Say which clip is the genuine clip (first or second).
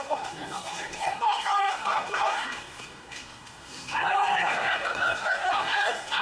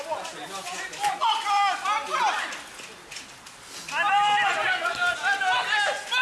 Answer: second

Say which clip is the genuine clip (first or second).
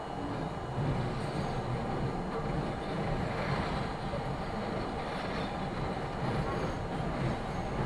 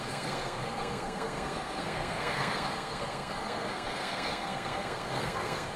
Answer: first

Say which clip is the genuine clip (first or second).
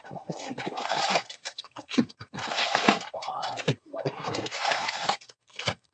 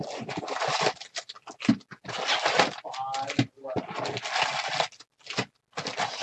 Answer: second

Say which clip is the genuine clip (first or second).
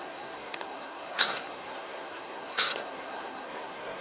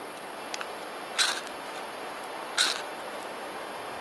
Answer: second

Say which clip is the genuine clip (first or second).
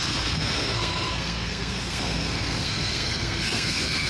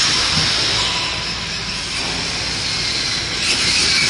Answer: second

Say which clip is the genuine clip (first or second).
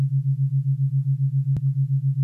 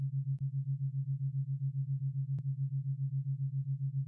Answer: first